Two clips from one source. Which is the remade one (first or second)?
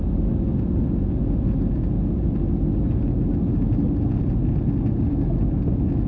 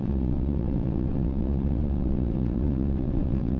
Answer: second